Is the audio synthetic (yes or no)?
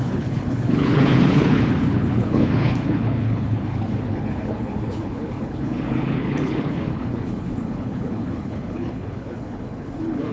yes